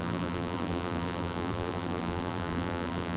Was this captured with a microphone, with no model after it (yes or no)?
no